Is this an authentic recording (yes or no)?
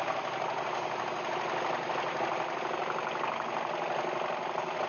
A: yes